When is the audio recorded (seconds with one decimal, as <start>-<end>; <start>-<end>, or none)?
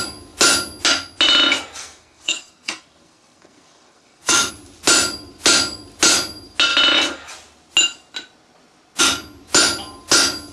0.0-1.8; 4.5-10.5